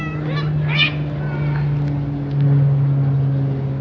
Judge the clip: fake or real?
real